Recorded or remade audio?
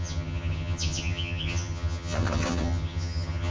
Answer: remade